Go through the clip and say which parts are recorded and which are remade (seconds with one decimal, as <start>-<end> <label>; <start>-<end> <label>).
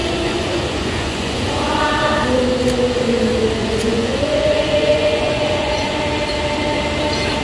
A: 0.0-1.8 remade; 1.8-3.6 recorded; 3.6-6.0 remade; 6.0-7.4 recorded